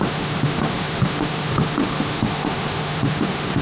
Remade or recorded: remade